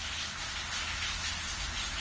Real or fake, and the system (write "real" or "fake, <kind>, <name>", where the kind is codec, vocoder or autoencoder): real